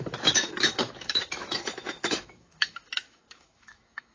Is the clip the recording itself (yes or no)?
no